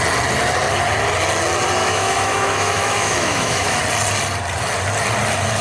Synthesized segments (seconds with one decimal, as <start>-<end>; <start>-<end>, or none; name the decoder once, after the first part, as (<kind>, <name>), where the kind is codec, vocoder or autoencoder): 1.8-3.8 (autoencoder, DAC-VAE)